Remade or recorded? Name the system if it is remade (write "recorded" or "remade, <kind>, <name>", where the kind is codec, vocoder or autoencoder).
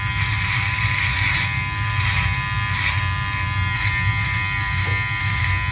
recorded